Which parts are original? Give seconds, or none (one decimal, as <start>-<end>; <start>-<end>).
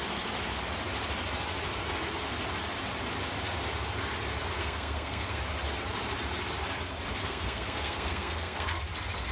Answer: 0.0-4.6; 5.4-7.2; 8.8-9.3